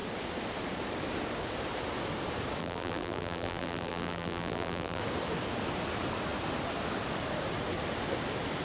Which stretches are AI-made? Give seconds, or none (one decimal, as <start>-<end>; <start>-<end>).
2.6-5.0